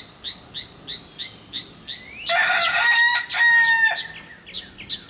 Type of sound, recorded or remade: recorded